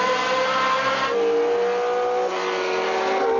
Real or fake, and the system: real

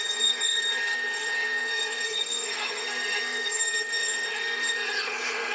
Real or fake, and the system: fake, codec, SNAC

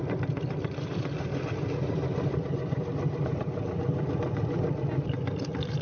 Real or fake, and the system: fake, vocoder, BigVGAN v2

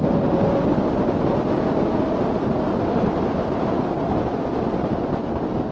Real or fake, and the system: real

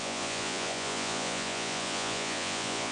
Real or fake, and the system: fake, vocoder, Vocos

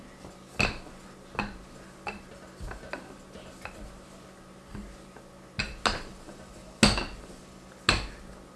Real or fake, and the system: real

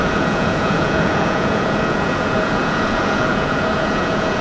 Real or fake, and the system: fake, vocoder, Vocos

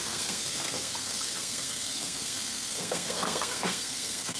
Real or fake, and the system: fake, codec, SNAC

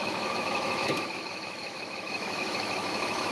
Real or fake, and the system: fake, autoencoder, DAC-VAE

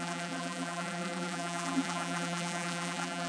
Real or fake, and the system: fake, vocoder, BigVGAN v2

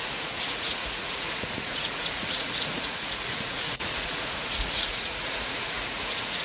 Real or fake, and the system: fake, vocoder, Vocos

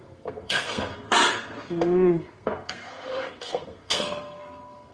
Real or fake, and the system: fake, codec, SNAC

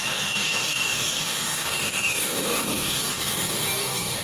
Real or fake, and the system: fake, codec, DAC